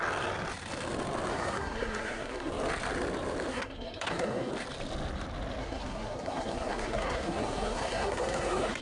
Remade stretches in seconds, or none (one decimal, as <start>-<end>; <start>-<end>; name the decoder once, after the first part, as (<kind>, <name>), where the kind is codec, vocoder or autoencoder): 1.3-2.5 (codec, SNAC); 3.5-4.5; 5.6-8.8